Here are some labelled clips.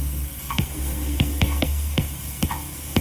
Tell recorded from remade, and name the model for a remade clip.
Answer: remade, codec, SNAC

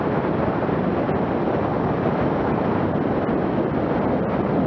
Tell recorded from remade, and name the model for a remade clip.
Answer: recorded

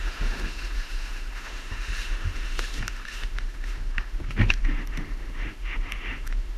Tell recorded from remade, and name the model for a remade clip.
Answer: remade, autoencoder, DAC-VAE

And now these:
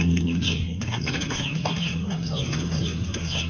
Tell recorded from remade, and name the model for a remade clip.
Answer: remade, codec, SNAC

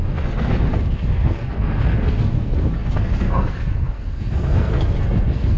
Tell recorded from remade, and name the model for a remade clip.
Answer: remade, codec, SNAC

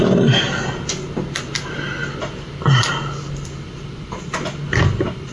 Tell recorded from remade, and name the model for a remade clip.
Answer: recorded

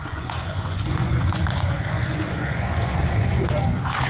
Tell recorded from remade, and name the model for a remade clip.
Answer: remade, vocoder, Vocos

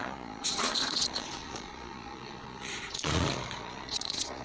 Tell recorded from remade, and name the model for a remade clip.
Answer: remade, vocoder, Vocos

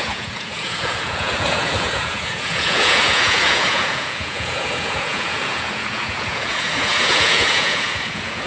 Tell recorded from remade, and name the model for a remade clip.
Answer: remade, vocoder, Vocos